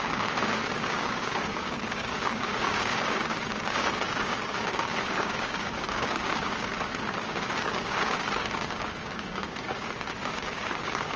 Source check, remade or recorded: remade